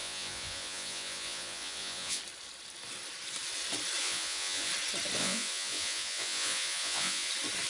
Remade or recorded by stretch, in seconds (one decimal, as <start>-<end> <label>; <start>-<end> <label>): 0.0-2.2 remade; 2.2-4.0 recorded; 4.0-4.7 remade; 4.7-5.2 recorded; 5.2-7.3 remade; 7.3-7.7 recorded